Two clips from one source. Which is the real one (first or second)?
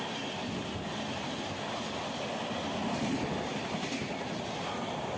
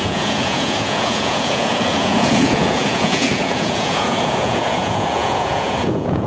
first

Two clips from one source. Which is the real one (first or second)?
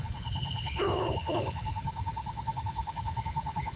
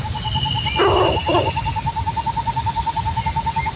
second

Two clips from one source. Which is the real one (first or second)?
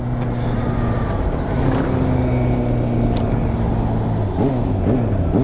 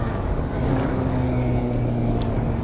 first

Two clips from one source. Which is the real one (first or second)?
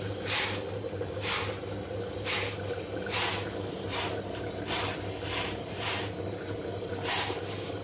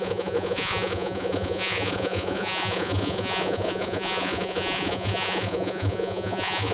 first